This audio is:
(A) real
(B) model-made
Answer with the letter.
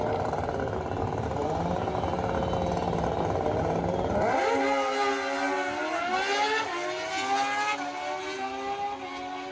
A